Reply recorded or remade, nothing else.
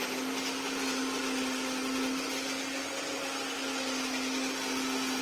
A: recorded